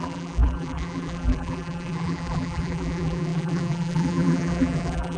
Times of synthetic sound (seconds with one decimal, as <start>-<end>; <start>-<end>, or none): 0.0-5.2